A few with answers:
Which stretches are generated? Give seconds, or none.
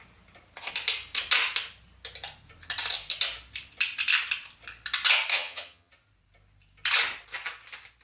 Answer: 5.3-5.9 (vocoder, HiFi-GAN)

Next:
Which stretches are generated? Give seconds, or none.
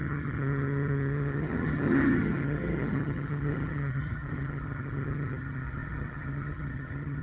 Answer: 0.0-7.2 (vocoder, HiFi-GAN)